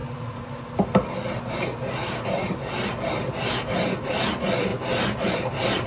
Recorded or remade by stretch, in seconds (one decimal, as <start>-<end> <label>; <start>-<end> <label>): 0.0-5.9 recorded